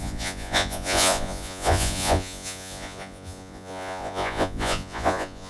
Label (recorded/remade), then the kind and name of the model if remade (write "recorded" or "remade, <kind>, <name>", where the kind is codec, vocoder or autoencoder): remade, vocoder, Vocos